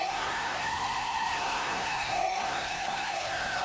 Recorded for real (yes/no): no